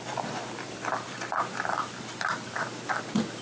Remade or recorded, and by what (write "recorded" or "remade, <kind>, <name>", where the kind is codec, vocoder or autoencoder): recorded